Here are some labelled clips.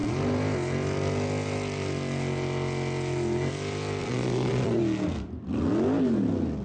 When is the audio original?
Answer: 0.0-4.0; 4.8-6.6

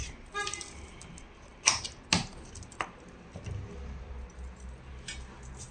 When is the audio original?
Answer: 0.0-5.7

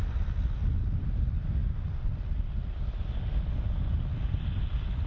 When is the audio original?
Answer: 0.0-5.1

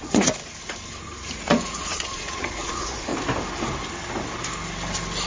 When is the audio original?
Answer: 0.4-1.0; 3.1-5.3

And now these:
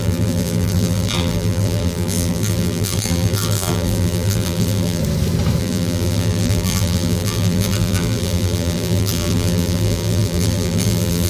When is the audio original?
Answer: 5.0-5.6